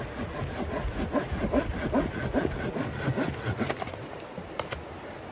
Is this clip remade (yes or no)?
no